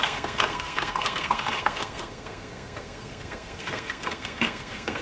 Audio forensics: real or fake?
fake